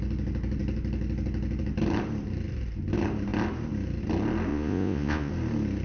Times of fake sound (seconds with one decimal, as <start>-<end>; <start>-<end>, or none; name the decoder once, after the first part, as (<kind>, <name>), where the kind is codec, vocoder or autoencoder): 4.5-5.3 (vocoder, Vocos)